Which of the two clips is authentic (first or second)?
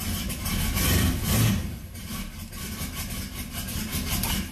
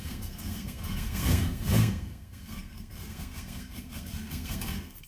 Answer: first